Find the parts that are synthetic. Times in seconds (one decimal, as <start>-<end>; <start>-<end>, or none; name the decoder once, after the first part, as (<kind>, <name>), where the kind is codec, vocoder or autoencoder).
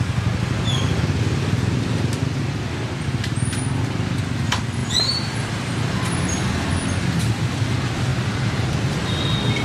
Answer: 4.8-6.7 (vocoder, BigVGAN v2); 8.1-8.9